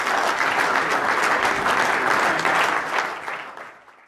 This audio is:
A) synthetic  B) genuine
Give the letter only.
B